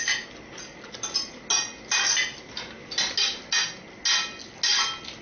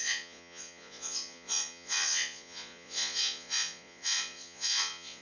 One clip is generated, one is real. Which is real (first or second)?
first